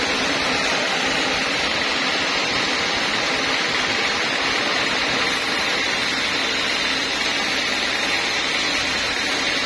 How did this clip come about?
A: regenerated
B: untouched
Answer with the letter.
B